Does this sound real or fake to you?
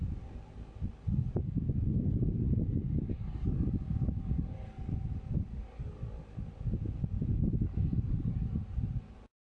real